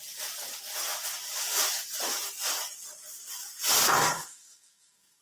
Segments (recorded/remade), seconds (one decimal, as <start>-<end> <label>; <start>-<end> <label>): 0.0-3.9 recorded; 3.9-5.2 remade

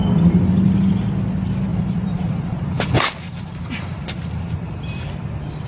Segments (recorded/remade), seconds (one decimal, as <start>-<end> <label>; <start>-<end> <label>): 0.0-1.7 recorded; 1.7-5.1 remade; 5.1-5.7 recorded

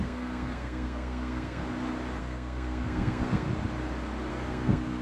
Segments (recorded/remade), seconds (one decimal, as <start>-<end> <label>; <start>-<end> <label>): 0.0-1.6 remade; 1.6-2.2 recorded; 2.2-3.5 remade; 3.5-4.3 recorded; 4.3-5.0 remade

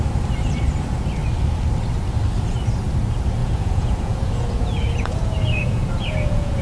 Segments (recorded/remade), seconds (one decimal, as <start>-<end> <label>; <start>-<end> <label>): 0.0-3.4 recorded; 3.4-6.6 remade

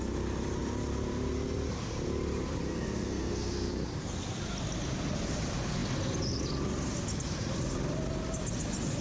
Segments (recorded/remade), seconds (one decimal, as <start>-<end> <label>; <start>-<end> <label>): 0.0-2.7 recorded; 2.7-3.7 remade; 3.7-9.0 recorded

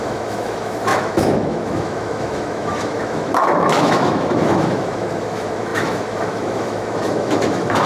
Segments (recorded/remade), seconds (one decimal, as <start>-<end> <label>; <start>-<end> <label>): 0.0-7.9 remade

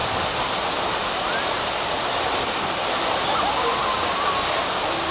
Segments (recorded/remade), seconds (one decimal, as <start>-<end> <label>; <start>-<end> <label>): 0.0-5.1 recorded